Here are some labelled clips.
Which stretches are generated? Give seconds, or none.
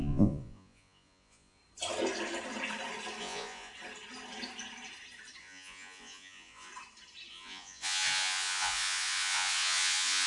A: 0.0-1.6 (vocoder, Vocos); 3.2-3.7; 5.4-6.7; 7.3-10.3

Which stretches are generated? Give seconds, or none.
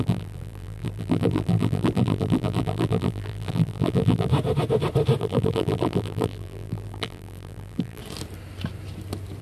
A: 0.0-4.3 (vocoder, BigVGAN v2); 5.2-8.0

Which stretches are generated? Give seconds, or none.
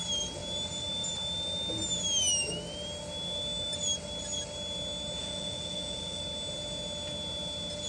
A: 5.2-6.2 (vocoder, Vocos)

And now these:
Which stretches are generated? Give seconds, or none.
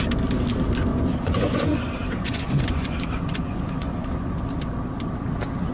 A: 0.9-4.3 (vocoder, Vocos)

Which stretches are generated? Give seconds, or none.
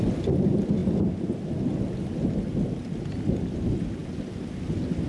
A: none